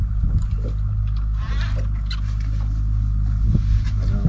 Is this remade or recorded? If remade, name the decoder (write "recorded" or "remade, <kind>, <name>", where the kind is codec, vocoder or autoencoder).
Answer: recorded